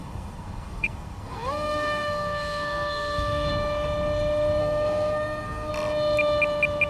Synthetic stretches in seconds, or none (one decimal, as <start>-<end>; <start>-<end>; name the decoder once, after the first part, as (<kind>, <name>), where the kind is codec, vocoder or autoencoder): 0.0-3.5 (codec, SNAC); 4.6-5.7